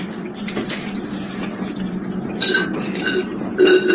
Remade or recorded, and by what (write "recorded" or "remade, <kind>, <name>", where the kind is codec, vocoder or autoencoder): recorded